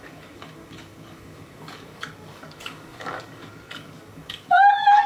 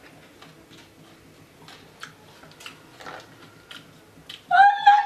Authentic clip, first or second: second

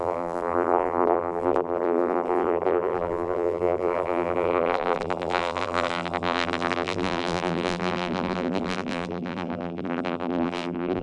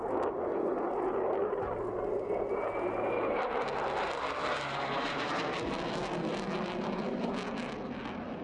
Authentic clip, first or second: second